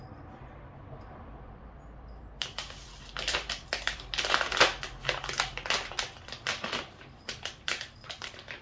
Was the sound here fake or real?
fake